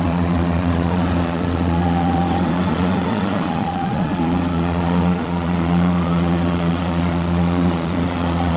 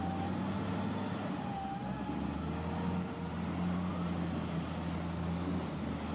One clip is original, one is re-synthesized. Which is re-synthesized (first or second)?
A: first